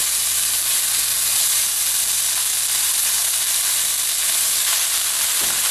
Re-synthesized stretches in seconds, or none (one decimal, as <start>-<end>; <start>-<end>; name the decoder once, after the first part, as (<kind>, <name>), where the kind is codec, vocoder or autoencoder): none